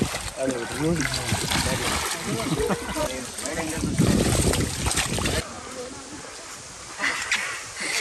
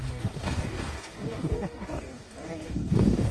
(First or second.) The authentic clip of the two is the first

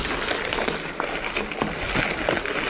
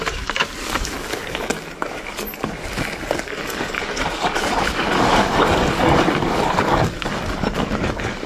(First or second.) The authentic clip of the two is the first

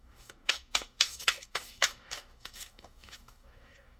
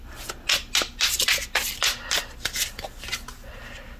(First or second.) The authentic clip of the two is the second